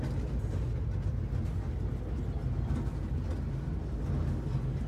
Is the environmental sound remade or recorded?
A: recorded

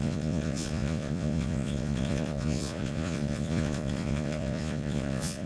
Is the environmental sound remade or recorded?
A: remade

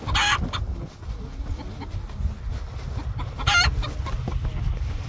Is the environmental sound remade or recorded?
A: recorded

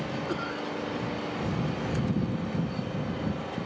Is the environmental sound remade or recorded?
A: recorded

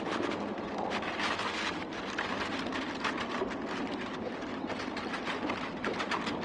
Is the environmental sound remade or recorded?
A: recorded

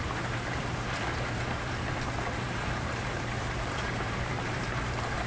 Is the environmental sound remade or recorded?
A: remade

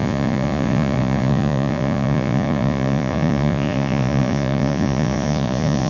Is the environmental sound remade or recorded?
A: remade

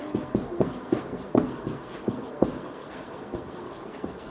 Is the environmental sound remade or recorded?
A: remade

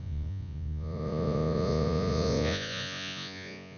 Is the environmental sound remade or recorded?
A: remade